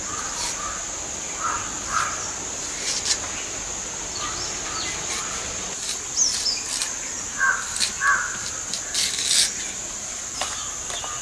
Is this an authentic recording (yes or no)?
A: yes